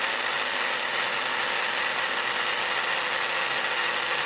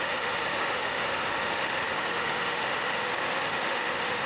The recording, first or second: first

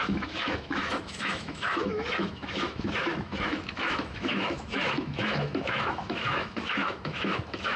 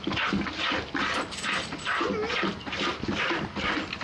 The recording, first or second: second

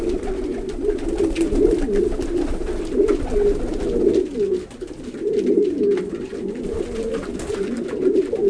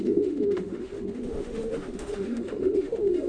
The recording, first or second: first